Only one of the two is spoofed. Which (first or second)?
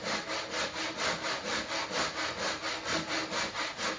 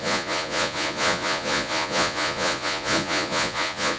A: second